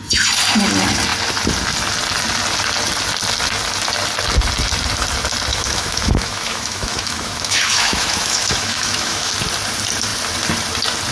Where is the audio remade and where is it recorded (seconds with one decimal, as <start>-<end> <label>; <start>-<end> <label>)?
0.0-5.5 recorded; 5.5-9.3 remade; 9.3-11.1 recorded